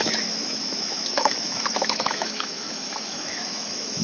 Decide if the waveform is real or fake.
fake